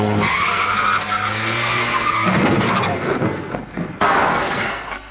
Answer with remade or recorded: remade